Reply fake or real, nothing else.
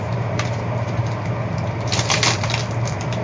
real